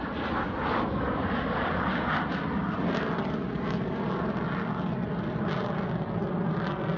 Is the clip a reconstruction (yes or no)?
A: no